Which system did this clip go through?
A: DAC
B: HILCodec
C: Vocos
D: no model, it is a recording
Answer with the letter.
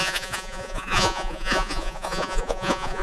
C